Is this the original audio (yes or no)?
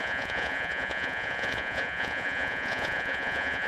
no